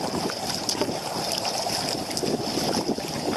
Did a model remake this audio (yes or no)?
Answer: no